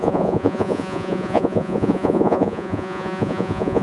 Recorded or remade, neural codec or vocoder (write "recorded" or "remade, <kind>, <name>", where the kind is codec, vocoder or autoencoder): remade, vocoder, Vocos